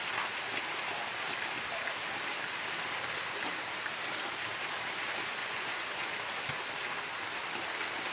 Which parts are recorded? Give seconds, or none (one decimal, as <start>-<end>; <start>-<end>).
0.0-5.4; 6.1-8.1

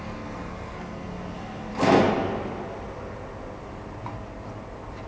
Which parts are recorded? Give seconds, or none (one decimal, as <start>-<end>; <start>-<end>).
1.7-5.1